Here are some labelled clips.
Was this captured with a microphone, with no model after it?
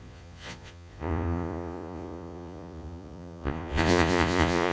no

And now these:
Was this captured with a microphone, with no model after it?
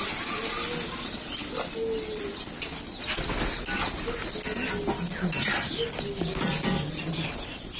yes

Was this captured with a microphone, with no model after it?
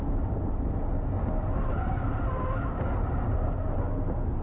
yes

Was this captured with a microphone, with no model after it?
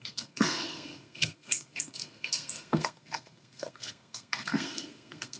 no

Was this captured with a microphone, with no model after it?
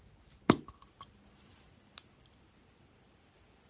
yes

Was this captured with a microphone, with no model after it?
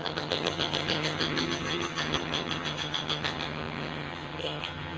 no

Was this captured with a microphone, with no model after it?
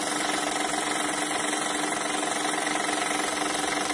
yes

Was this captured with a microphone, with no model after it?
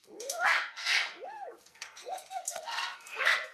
no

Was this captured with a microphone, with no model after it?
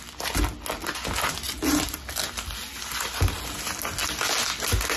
yes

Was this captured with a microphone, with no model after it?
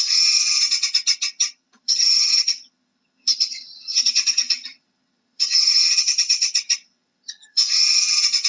no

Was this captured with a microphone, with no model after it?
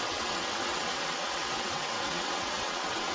no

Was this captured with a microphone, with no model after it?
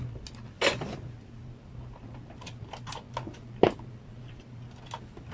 yes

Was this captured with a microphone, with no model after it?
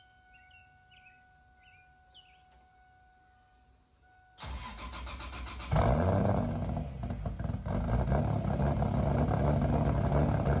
yes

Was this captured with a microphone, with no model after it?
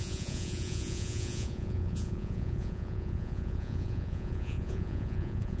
no